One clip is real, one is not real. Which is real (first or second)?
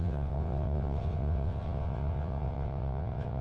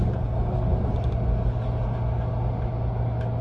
second